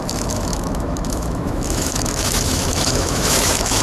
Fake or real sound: fake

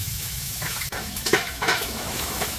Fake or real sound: fake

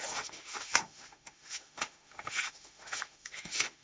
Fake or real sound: fake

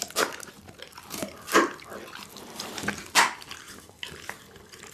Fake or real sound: real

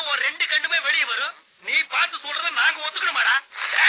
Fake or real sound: real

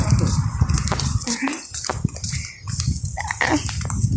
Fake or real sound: real